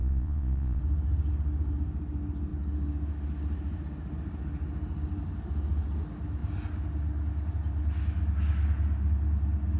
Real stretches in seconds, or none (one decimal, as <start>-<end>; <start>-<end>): 0.8-9.8